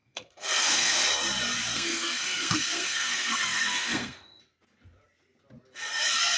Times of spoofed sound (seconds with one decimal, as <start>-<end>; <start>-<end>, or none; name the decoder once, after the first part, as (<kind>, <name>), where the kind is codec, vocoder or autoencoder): 0.0-1.0 (codec, SNAC); 1.7-4.4